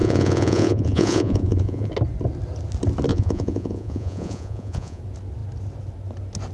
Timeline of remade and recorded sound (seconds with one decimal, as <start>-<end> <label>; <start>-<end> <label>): 0.0-1.9 remade; 1.9-3.1 recorded; 3.1-5.0 remade; 5.0-6.5 recorded